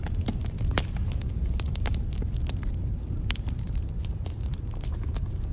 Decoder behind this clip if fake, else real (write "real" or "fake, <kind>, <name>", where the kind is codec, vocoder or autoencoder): fake, vocoder, BigVGAN v2